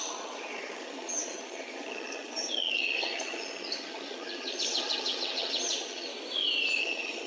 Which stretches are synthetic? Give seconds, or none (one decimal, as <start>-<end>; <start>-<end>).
0.0-6.1; 6.8-7.3